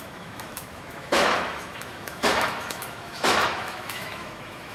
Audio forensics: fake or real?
fake